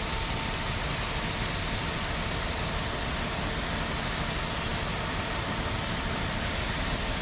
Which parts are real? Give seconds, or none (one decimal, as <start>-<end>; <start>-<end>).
0.0-7.2